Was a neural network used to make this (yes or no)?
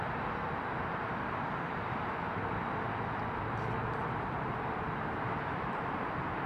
yes